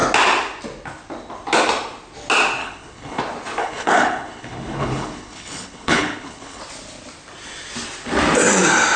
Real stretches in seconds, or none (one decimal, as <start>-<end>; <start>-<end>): 0.0-2.6; 3.2-3.6; 6.6-9.0